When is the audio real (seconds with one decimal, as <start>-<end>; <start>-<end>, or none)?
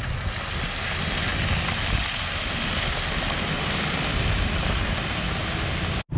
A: 0.0-6.2